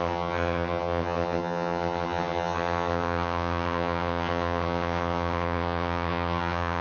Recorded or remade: remade